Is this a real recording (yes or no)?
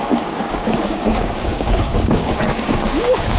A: no